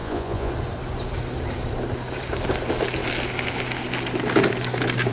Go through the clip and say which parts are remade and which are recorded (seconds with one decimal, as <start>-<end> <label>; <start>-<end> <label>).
0.0-0.5 remade; 0.5-5.1 recorded